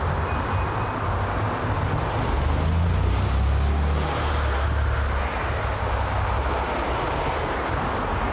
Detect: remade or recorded recorded